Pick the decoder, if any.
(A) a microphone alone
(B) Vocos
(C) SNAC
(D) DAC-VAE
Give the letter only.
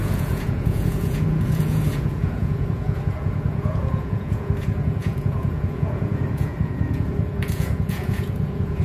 B